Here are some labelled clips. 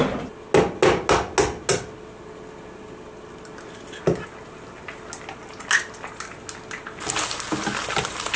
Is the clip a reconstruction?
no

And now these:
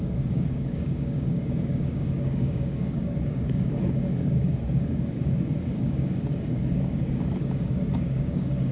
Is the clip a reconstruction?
yes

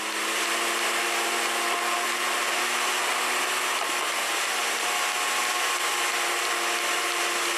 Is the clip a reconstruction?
no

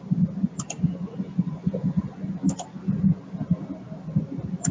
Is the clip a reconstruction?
no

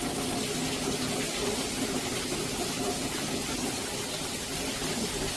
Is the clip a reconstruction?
no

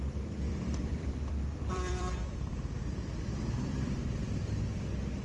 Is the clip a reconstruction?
yes